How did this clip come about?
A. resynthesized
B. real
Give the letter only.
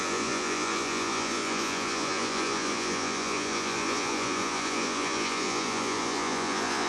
A